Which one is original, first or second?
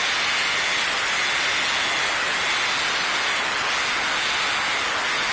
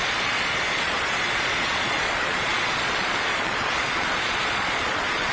first